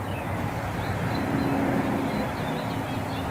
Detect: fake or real real